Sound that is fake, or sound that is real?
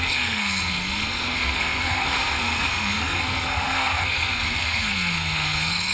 fake